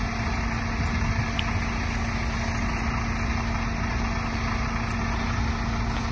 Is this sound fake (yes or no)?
no